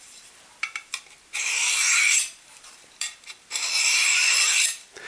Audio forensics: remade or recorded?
remade